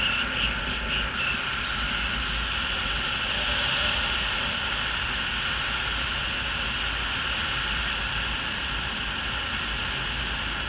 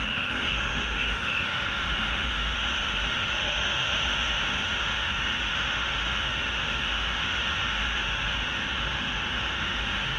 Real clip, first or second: first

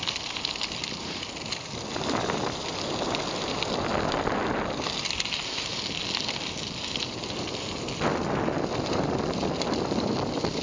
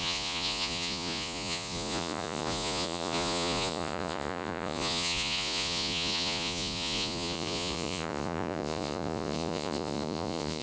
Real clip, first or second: first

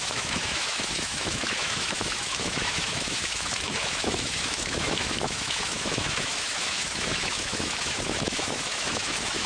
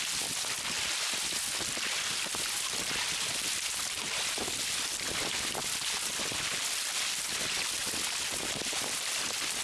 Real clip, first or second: second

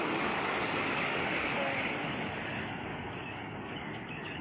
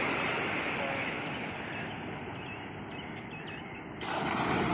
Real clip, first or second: second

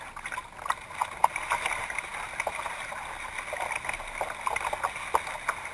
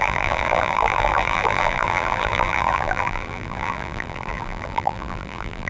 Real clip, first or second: first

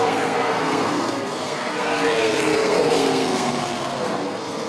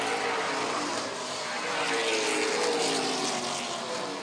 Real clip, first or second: second